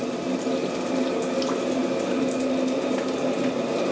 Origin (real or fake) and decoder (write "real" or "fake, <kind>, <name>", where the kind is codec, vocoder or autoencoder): real